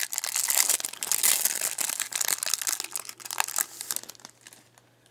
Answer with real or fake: real